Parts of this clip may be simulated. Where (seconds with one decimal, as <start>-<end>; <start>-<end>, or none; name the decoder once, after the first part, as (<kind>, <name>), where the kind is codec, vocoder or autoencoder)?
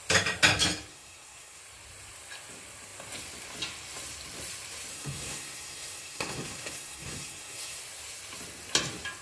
0.9-1.6 (codec, SNAC); 4.9-7.8